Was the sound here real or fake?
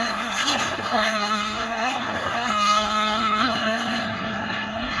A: fake